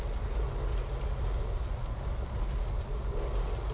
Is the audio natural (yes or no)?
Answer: yes